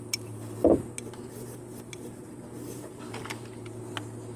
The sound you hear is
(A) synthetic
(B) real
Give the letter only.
B